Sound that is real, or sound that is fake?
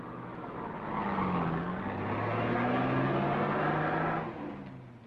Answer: real